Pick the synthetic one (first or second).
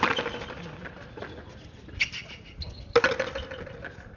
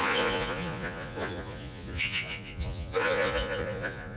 second